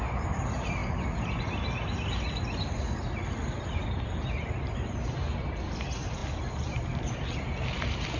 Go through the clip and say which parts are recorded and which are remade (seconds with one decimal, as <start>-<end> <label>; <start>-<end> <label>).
0.0-6.2 recorded; 6.2-7.1 remade; 7.1-8.2 recorded